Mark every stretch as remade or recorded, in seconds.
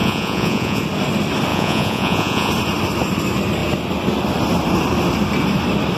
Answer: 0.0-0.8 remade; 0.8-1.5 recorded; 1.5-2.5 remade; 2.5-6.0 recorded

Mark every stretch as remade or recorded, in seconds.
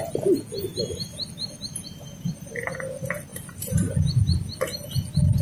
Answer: 0.0-0.7 recorded; 0.7-1.2 remade; 1.2-3.3 recorded; 3.3-3.9 remade; 3.9-5.4 recorded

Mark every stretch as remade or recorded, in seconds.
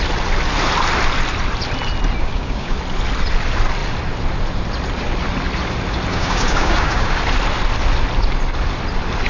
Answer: 0.0-2.2 recorded; 2.2-2.8 remade; 2.8-6.1 recorded; 6.1-7.2 remade; 7.2-9.3 recorded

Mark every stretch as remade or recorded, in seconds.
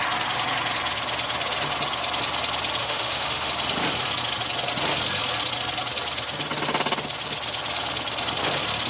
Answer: 0.0-2.8 recorded; 2.8-3.5 remade; 3.5-8.9 recorded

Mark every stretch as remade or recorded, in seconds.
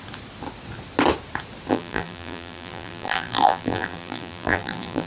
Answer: 0.0-1.7 recorded; 1.7-5.1 remade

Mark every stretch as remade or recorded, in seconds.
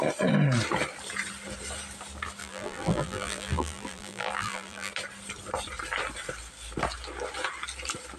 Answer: 0.0-2.4 recorded; 2.4-4.9 remade; 4.9-8.2 recorded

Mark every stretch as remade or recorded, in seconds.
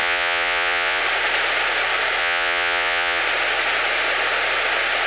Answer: 0.0-1.0 remade; 1.0-2.2 recorded; 2.2-3.2 remade; 3.2-5.1 recorded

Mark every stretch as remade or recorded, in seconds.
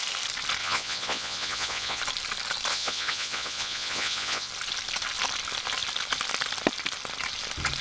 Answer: 0.0-0.6 recorded; 0.6-2.0 remade; 2.0-2.7 recorded; 2.7-4.5 remade; 4.5-7.8 recorded